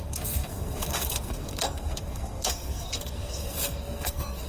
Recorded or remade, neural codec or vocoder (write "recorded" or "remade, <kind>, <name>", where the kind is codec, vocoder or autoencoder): remade, codec, SNAC